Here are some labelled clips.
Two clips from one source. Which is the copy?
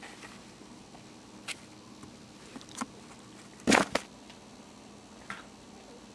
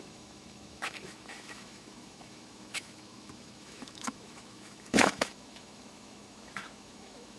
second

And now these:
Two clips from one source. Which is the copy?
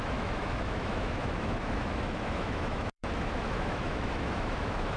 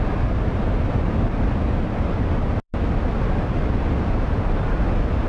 first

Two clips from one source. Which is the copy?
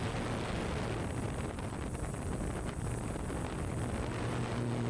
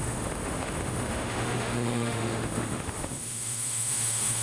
second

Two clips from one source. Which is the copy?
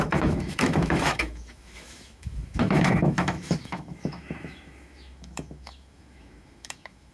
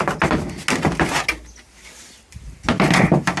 first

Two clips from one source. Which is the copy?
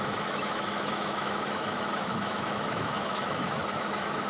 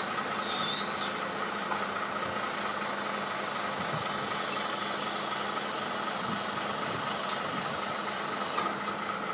first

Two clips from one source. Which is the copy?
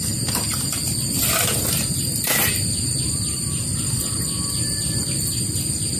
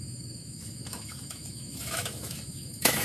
second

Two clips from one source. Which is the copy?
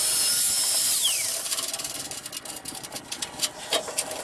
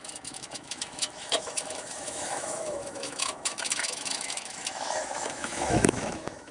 second